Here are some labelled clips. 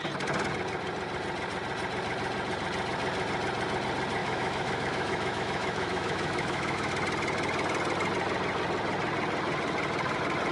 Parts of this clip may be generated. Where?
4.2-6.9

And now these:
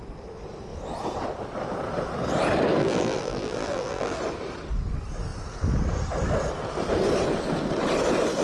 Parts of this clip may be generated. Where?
2.8-4.2

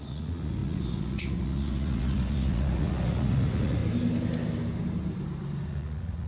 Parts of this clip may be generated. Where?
0.0-3.8; 5.7-6.3

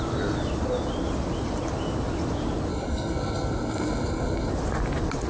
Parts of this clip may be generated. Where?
2.7-4.5

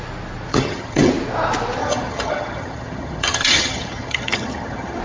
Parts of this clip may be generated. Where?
0.5-1.1; 1.8-5.0

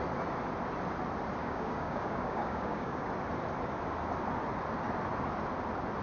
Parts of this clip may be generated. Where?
1.4-3.1

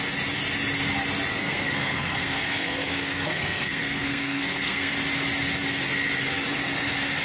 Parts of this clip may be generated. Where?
1.3-4.9